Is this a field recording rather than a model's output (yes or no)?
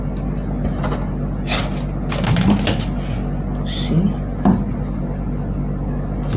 yes